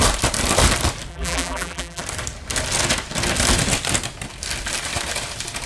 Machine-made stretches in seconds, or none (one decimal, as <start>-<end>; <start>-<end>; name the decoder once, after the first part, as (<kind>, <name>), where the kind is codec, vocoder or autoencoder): 1.1-2.0 (vocoder, BigVGAN v2)